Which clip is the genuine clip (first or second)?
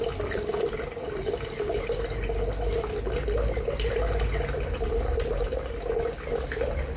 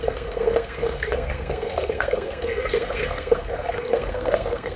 first